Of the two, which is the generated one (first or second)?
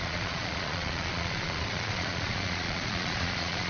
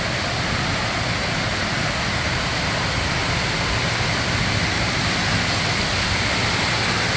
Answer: first